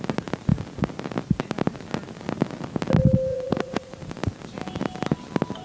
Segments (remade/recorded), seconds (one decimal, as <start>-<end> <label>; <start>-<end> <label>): 0.0-3.3 recorded; 3.3-4.0 remade; 4.0-5.6 recorded